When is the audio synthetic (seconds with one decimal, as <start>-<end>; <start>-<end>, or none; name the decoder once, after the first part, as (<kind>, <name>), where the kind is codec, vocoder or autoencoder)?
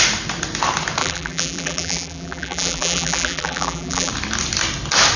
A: 1.0-4.1 (vocoder, BigVGAN v2)